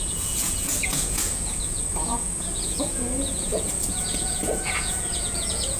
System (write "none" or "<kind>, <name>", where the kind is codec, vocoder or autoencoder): vocoder, Vocos